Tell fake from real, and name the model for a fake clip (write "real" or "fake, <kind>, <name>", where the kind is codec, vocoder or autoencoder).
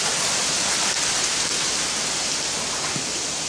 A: real